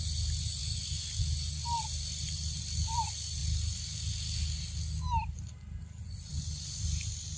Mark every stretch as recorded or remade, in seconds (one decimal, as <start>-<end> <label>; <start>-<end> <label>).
0.0-7.4 recorded